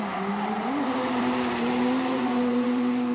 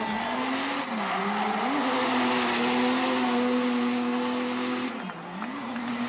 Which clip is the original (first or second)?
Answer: second